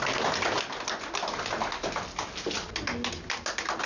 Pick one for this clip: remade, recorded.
recorded